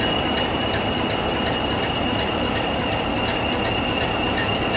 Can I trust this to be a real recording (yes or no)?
yes